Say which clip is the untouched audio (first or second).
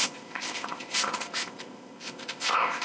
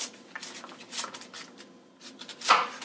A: second